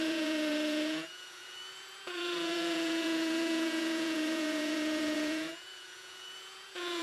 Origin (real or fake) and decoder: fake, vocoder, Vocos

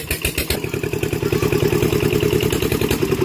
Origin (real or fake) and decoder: real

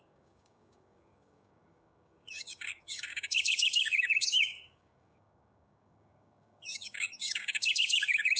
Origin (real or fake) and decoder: fake, codec, DAC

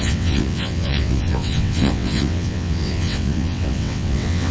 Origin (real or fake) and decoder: fake, vocoder, WaveNeXt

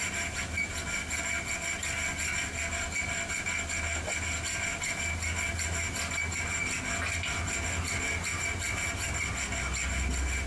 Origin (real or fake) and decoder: real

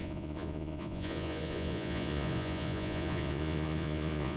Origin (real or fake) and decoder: fake, vocoder, Vocos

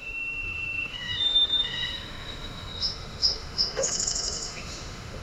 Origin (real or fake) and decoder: fake, autoencoder, DAC-VAE